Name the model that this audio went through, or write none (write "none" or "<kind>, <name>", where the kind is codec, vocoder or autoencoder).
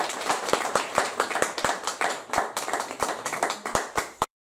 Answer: vocoder, BigVGAN v2